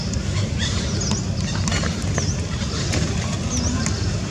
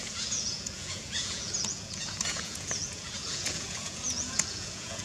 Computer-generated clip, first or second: second